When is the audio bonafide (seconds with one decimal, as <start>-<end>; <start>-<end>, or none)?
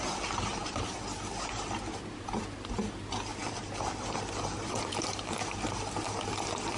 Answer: 0.0-3.3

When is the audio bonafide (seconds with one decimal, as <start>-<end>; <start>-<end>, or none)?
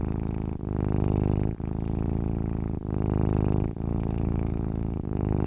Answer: 0.0-3.9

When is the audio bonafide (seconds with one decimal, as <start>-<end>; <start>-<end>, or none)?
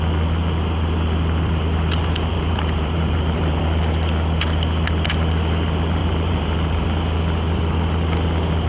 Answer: 0.0-2.3; 3.6-6.0; 6.8-8.7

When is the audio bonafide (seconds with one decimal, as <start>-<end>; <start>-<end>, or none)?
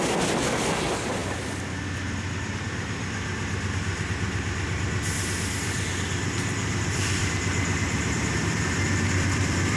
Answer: 0.0-6.6